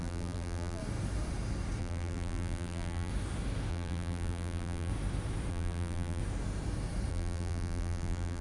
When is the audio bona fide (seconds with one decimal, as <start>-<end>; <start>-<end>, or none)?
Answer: 0.8-1.8; 3.1-3.7; 4.9-5.5; 6.2-7.1